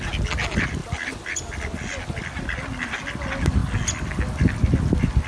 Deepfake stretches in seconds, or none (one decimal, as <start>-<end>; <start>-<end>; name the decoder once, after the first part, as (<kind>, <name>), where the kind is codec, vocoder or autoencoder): none